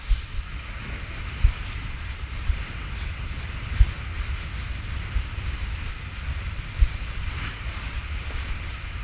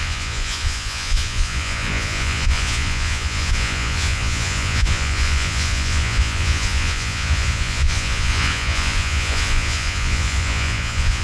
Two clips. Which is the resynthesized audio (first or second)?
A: second